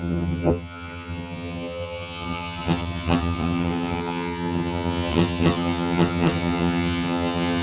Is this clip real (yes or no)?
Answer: no